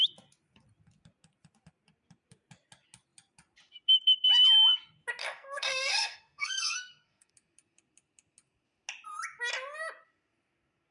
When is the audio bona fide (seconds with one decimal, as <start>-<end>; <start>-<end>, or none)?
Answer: 0.0-5.2; 7.3-10.9